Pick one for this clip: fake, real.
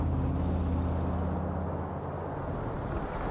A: real